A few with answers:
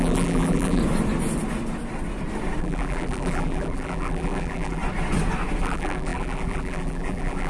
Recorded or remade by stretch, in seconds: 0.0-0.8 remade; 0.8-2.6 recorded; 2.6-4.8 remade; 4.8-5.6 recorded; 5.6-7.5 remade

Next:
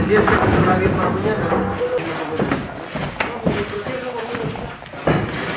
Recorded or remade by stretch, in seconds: 0.0-0.5 remade; 0.5-1.8 recorded; 1.8-2.6 remade; 2.6-4.2 recorded; 4.2-5.6 remade

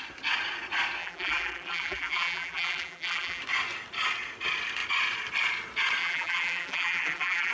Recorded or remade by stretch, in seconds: 0.0-1.0 recorded; 1.0-3.4 remade; 3.4-6.0 recorded; 6.0-7.5 remade

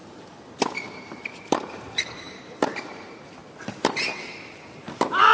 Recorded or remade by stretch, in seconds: 0.0-3.4 remade; 3.4-4.7 recorded; 4.7-5.3 remade

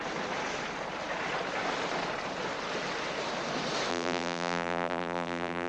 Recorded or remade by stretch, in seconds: 0.0-3.9 recorded; 3.9-5.7 remade

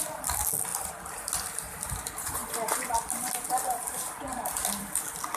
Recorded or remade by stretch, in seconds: 0.0-5.4 recorded

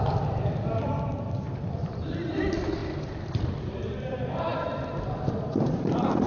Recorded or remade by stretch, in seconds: 0.0-4.5 remade; 4.5-5.4 recorded; 5.4-6.3 remade

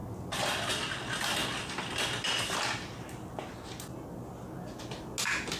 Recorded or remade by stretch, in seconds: 0.0-5.6 recorded